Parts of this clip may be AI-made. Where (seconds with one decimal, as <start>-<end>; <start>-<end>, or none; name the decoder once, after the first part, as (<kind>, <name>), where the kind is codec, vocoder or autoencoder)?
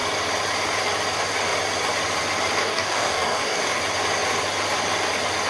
2.6-3.8 (codec, DAC)